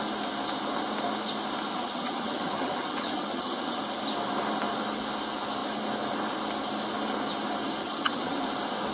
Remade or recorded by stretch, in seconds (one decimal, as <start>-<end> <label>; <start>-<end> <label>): 0.0-1.7 recorded; 1.7-3.8 remade; 3.8-7.8 recorded; 7.8-8.4 remade; 8.4-8.9 recorded